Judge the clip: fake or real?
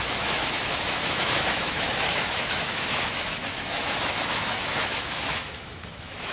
fake